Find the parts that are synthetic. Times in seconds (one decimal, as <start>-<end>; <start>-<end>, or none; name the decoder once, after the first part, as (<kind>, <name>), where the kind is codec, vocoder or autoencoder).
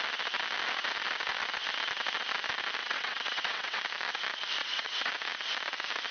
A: 2.8-3.8 (vocoder, WaveNeXt); 4.6-5.1